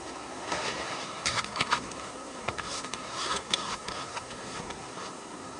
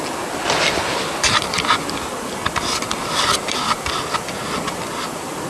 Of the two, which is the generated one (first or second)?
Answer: first